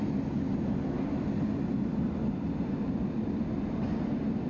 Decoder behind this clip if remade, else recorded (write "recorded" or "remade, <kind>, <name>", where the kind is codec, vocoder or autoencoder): recorded